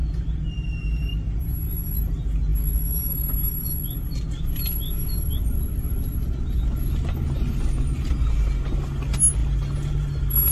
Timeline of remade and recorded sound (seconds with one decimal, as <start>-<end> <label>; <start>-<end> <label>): 0.0-10.5 recorded

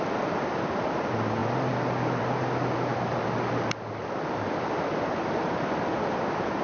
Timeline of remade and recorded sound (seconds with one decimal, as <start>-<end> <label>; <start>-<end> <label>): 0.0-6.6 recorded

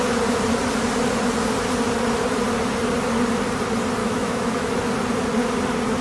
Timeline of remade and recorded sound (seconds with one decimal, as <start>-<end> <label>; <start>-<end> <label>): 0.0-4.0 recorded; 4.0-4.7 remade; 4.7-6.0 recorded

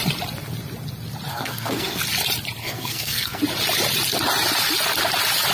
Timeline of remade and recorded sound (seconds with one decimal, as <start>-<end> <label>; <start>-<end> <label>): 0.0-1.3 recorded; 1.3-2.0 remade; 2.0-2.6 recorded; 2.6-3.4 remade; 3.4-5.5 recorded